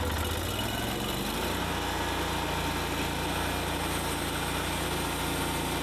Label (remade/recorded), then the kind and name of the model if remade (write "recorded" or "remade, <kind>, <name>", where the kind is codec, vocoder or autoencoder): recorded